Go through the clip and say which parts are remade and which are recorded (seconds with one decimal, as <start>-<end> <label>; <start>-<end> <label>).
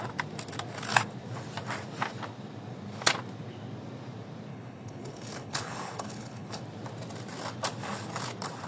0.0-4.5 recorded; 4.5-6.6 remade; 6.6-8.7 recorded